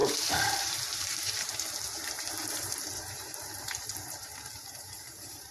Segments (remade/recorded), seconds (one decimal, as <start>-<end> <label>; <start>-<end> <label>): 0.0-5.5 remade